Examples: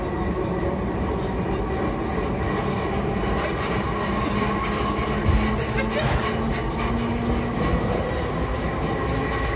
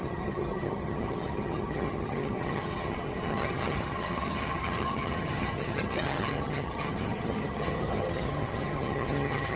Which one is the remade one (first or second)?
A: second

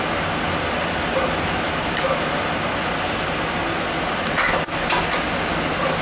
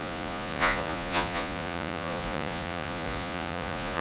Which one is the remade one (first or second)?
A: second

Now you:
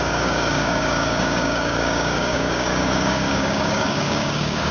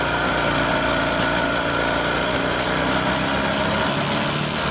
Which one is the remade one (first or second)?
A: first